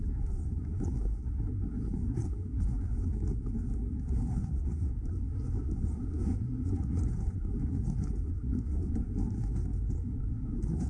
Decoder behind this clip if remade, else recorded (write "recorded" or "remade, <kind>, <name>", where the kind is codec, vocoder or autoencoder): remade, codec, SNAC